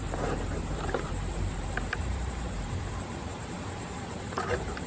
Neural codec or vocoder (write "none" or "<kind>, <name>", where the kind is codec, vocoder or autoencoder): vocoder, BigVGAN v2